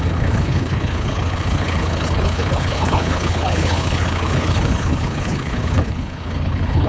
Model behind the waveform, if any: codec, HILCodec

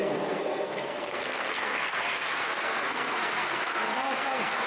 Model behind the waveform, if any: codec, SNAC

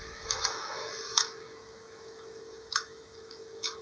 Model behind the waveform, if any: autoencoder, DAC-VAE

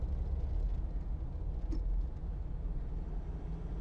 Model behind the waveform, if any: none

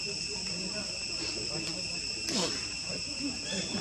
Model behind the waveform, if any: none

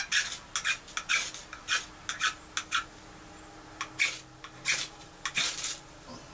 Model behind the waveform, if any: none